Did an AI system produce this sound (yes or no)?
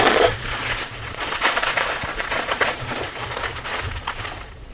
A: yes